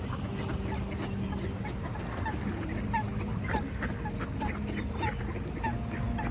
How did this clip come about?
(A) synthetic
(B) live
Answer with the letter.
B